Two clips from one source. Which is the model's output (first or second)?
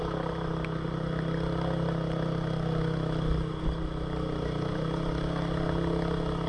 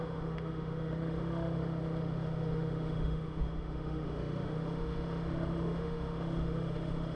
second